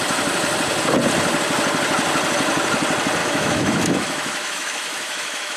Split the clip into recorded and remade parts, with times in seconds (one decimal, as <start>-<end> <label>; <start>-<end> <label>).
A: 0.0-3.2 recorded; 3.2-5.6 remade